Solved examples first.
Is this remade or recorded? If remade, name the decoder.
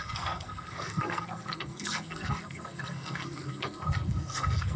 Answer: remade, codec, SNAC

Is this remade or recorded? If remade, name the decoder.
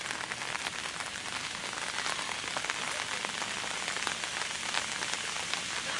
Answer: recorded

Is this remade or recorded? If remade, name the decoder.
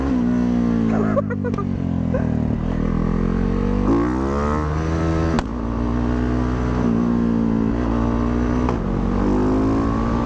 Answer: recorded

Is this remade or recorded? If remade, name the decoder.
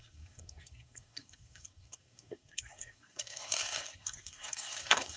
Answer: remade, codec, SNAC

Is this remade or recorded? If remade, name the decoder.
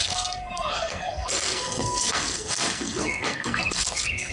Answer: remade, codec, SNAC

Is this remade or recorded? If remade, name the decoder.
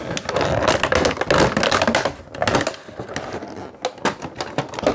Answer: recorded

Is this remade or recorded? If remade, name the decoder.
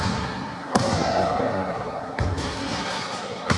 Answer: remade, codec, SNAC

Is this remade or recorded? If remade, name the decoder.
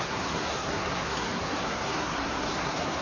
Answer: remade, codec, SNAC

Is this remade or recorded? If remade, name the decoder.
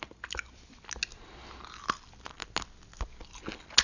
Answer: recorded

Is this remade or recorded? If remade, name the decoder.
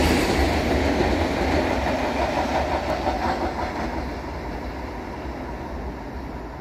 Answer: recorded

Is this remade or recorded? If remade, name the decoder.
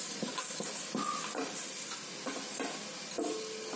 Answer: recorded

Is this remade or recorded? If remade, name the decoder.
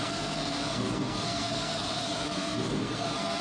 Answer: remade, codec, SNAC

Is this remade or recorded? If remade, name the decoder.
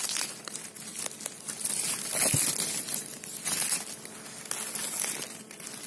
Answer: recorded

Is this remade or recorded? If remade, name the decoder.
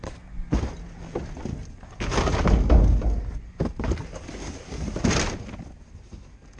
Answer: recorded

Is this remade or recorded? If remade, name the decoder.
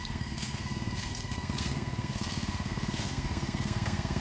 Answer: remade, codec, SNAC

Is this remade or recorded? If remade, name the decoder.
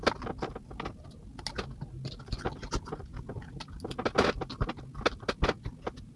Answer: recorded